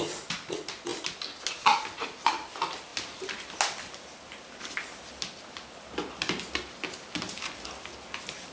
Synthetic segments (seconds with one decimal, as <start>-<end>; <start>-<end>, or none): none